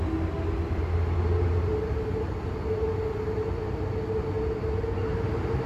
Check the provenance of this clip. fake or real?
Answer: real